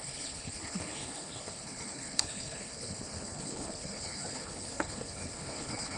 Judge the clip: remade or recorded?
remade